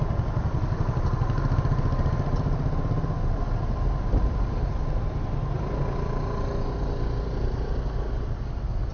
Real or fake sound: real